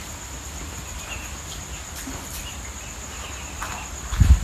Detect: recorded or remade recorded